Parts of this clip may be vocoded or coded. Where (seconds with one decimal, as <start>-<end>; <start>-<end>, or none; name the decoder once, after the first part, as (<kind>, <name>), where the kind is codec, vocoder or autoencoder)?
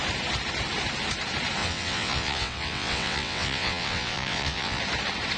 1.6-4.8 (vocoder, WaveNeXt)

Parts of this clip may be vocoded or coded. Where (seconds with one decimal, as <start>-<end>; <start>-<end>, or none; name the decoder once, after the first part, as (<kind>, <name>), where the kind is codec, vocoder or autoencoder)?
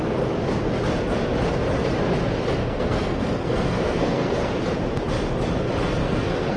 2.6-4.6 (codec, SNAC); 6.0-6.6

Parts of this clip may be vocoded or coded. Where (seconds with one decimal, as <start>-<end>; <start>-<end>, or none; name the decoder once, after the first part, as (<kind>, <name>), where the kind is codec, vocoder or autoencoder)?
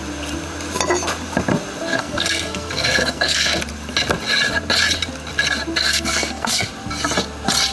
1.9-3.6 (codec, SNAC); 5.8-6.7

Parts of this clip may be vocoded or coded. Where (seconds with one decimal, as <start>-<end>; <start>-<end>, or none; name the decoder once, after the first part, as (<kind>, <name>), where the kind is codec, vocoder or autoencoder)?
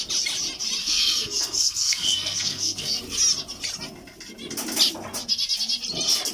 0.8-3.0 (codec, SNAC)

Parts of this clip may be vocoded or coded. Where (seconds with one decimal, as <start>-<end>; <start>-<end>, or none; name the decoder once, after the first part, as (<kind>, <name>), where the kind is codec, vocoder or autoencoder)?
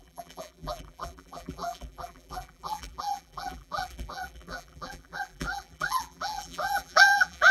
0.0-7.5 (vocoder, BigVGAN v2)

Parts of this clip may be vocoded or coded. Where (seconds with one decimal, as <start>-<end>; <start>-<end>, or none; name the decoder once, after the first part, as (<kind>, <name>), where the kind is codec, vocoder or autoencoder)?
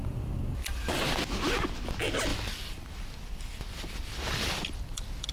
0.0-1.0 (vocoder, BigVGAN v2); 2.3-5.3